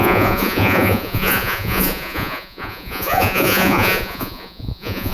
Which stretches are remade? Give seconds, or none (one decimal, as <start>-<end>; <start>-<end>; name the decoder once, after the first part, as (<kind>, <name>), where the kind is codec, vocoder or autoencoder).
0.0-5.1 (vocoder, Vocos)